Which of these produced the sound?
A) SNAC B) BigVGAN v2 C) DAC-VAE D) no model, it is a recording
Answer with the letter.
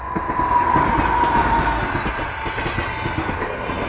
D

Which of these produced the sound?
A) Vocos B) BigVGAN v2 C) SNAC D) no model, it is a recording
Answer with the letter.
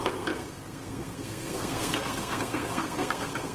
C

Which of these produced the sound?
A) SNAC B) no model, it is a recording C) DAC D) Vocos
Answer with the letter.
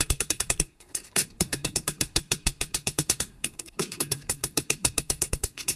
A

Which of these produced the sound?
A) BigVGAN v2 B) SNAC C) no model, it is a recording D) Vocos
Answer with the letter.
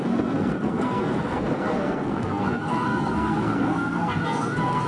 B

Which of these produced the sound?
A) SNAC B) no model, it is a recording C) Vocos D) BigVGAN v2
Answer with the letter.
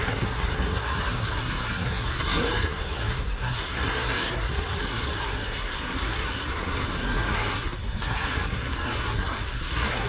A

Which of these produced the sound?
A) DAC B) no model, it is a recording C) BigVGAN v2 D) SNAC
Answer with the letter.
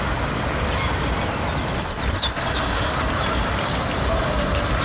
B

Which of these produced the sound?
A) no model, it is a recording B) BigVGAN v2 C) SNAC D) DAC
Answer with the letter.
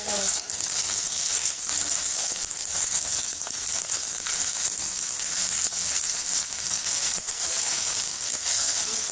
C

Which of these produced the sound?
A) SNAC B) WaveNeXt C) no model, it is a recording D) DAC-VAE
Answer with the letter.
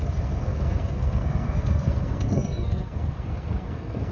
A